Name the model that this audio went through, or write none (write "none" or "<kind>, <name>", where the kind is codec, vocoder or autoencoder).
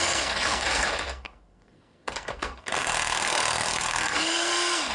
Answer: codec, SNAC